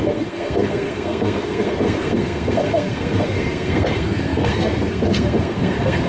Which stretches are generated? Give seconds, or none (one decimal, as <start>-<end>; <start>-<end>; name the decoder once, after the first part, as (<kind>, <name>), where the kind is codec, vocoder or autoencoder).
0.0-6.1 (codec, SNAC)